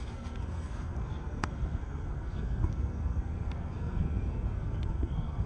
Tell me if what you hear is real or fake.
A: fake